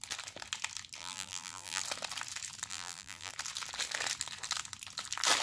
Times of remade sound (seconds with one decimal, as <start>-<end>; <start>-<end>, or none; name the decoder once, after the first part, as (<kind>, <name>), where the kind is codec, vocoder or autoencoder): 1.0-1.8 (vocoder, BigVGAN v2); 2.7-3.3